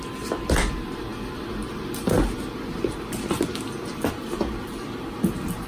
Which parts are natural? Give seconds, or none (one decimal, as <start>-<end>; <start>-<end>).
0.0-5.7